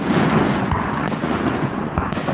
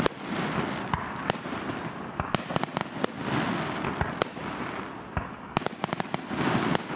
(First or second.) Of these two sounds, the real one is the second